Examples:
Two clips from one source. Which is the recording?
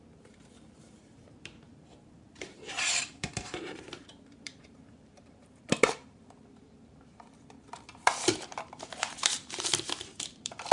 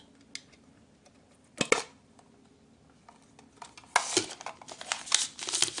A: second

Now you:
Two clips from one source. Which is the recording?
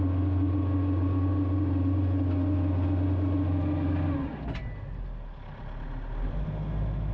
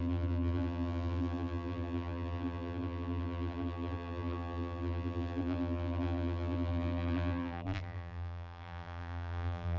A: first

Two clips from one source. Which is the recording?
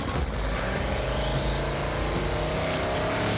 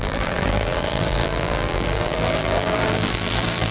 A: first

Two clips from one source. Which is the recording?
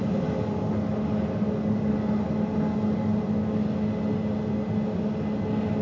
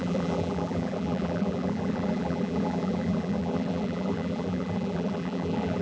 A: first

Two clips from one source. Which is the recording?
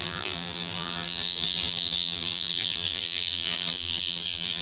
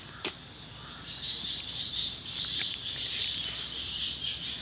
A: second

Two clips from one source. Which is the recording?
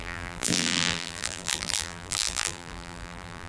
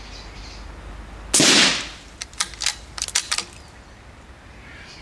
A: second